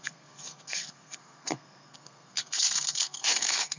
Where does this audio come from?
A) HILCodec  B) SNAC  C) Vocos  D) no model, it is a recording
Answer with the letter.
B